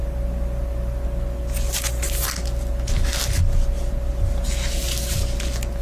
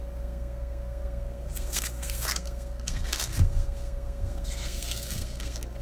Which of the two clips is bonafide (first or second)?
first